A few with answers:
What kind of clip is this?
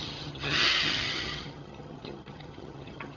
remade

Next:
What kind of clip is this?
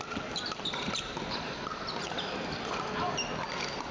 recorded